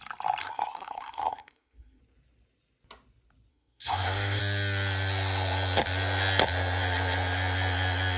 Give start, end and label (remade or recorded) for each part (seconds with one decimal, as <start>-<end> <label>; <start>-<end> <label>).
0.0-0.4 recorded; 0.4-2.0 remade; 2.0-3.5 recorded; 3.5-4.4 remade; 4.4-8.2 recorded